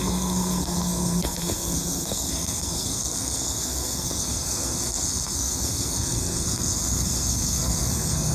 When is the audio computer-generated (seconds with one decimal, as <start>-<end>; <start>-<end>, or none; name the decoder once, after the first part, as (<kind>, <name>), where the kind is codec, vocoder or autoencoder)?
0.0-8.3 (codec, SNAC)